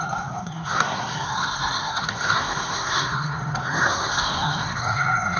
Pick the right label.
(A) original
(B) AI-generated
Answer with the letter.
B